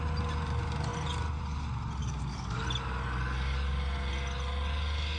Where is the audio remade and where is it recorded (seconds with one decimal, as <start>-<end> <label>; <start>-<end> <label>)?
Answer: 0.0-2.0 recorded; 2.0-2.6 remade; 2.6-5.2 recorded